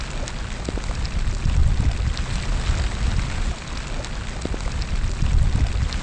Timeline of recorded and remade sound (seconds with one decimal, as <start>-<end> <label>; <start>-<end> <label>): 0.0-6.0 recorded